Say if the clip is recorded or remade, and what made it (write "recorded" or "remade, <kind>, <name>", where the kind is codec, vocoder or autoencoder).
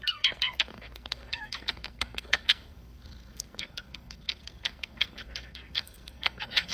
remade, codec, SNAC